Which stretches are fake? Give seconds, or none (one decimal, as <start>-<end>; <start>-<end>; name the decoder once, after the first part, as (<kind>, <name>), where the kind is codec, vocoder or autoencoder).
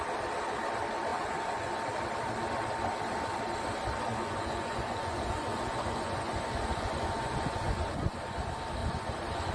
1.1-1.8 (vocoder, Vocos); 4.1-8.4; 8.8-9.5